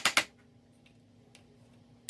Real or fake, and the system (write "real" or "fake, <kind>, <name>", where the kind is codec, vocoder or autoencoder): real